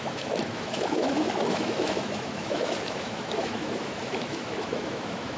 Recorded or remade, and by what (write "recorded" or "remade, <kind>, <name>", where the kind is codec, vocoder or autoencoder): remade, autoencoder, DAC-VAE